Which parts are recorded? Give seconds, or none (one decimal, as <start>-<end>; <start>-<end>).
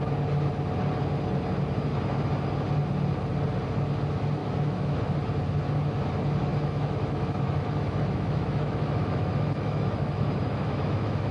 0.0-4.4; 5.0-6.5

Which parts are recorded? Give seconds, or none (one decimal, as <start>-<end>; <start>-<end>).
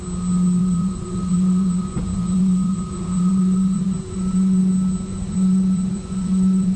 0.0-0.6; 4.6-5.1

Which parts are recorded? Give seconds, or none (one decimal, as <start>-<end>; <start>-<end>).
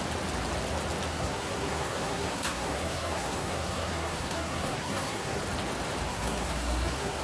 0.0-1.1; 5.4-6.1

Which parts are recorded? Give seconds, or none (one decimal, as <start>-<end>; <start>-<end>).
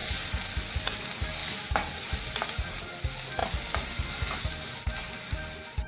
0.0-5.9